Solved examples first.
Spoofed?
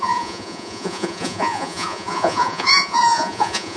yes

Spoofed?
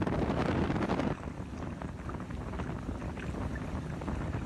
no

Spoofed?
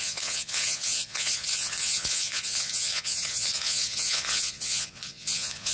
yes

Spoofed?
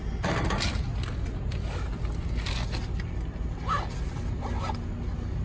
no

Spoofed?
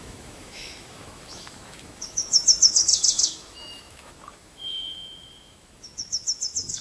yes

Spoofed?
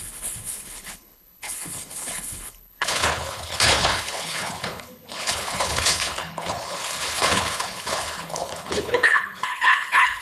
yes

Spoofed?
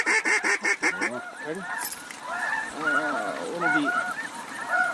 no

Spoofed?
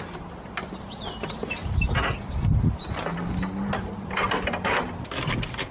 no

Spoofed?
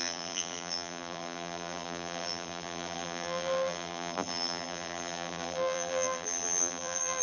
yes